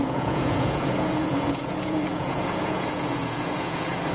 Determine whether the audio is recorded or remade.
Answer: remade